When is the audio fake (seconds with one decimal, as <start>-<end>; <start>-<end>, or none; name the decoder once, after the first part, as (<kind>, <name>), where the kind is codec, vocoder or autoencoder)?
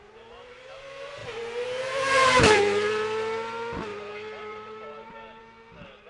1.2-2.6 (vocoder, BigVGAN v2); 3.9-5.4